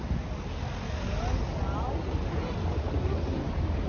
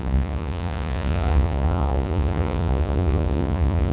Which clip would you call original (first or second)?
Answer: first